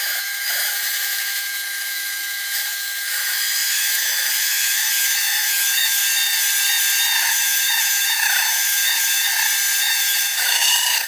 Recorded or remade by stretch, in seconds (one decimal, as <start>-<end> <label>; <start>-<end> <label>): 0.0-6.0 remade; 6.0-7.3 recorded; 7.3-9.3 remade; 9.3-9.8 recorded; 9.8-11.1 remade